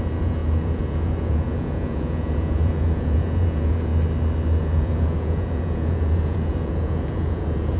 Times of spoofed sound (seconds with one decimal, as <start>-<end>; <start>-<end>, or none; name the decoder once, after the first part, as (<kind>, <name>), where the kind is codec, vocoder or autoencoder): 0.0-3.9 (vocoder, Vocos); 4.6-7.8